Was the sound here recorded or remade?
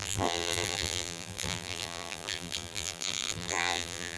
remade